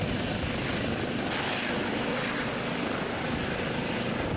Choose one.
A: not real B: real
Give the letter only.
B